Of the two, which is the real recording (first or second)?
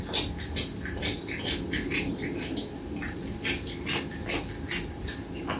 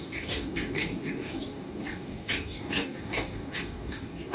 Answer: first